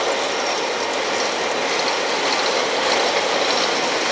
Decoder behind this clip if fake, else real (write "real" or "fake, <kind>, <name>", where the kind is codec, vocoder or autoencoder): real